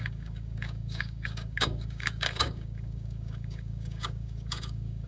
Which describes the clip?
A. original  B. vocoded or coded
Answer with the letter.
B